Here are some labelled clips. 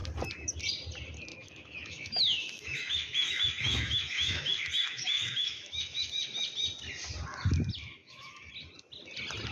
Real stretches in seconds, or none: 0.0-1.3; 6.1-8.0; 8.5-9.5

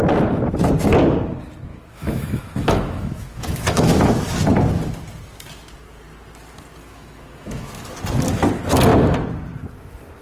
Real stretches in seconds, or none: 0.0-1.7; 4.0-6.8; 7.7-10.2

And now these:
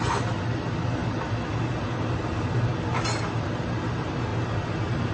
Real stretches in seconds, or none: 0.0-5.1

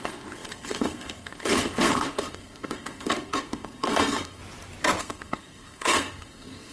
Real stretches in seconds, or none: 4.4-5.0